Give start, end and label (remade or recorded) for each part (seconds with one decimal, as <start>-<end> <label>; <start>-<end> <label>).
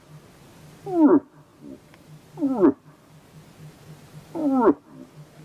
0.0-5.4 recorded